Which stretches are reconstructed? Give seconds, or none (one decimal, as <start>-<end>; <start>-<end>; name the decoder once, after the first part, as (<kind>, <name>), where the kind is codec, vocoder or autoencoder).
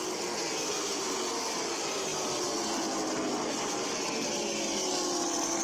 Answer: none